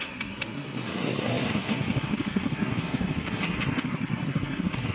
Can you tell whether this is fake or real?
fake